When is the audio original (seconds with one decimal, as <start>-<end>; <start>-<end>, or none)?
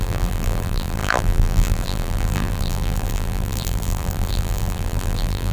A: none